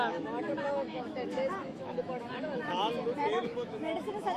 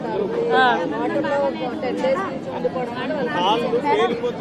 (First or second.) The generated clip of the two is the first